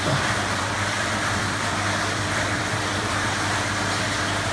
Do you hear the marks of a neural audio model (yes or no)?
yes